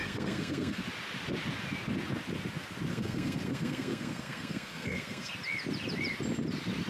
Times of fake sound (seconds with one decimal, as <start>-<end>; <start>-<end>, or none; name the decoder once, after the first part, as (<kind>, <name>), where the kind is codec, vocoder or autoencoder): 0.0-0.8 (codec, SNAC); 2.9-5.3